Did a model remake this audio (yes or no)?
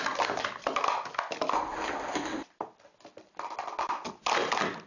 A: no